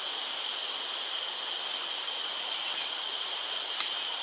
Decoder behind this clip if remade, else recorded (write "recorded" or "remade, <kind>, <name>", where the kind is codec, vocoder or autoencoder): recorded